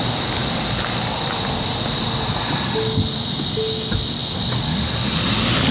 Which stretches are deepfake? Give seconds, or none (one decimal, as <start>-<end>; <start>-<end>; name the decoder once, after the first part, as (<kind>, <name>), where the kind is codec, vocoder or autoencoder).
none